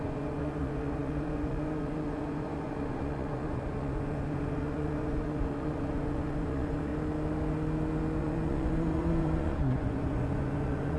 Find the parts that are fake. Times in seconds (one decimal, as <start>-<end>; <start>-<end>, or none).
0.0-6.9; 8.2-11.0